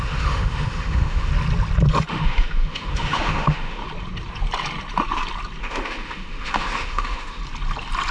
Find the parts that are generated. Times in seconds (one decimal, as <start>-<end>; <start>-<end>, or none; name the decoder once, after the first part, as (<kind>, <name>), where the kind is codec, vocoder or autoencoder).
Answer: 0.0-1.3 (autoencoder, DAC-VAE); 2.1-3.8; 5.6-7.4